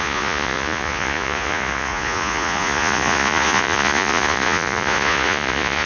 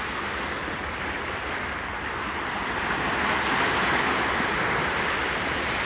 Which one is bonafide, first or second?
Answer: second